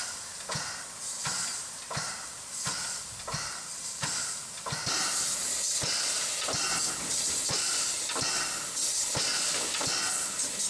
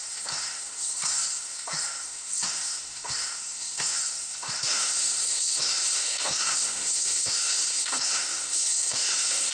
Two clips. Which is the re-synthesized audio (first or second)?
second